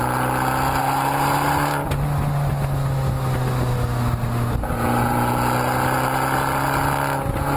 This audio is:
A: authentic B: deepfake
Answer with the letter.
A